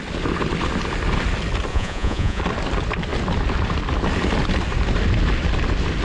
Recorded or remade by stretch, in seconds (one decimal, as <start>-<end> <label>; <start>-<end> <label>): 0.0-1.7 recorded; 1.7-2.4 remade; 2.4-6.0 recorded

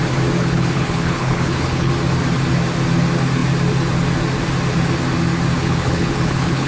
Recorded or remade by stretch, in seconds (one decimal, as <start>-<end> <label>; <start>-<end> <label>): 0.0-0.4 recorded; 0.4-1.9 remade; 1.9-5.6 recorded; 5.6-6.7 remade